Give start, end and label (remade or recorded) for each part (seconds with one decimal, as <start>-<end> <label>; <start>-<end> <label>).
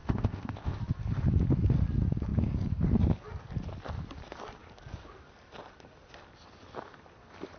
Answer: 0.0-0.8 remade; 0.8-7.6 recorded